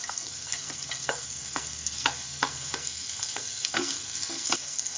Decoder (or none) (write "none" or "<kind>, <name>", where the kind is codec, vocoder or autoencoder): codec, SNAC